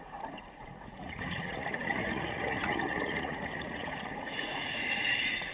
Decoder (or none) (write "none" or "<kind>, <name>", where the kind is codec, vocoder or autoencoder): vocoder, Vocos